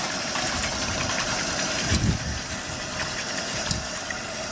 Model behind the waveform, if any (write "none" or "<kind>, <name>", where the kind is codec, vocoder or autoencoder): none